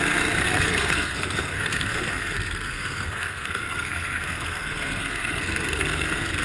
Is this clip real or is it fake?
fake